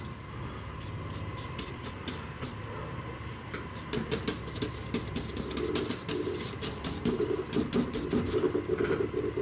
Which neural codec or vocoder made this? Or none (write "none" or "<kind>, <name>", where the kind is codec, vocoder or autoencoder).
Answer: none